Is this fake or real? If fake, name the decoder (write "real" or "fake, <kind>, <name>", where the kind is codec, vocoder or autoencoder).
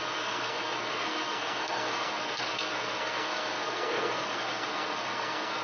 fake, codec, SNAC